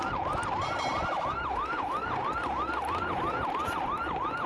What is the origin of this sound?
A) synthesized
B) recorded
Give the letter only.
A